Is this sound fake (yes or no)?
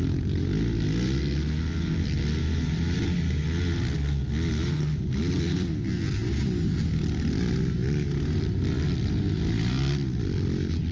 no